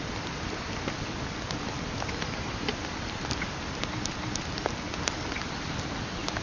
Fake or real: real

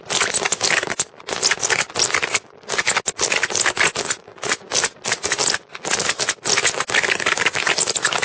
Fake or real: real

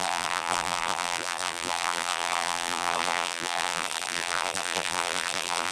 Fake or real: fake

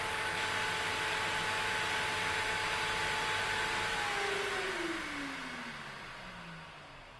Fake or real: real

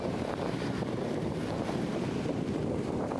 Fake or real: fake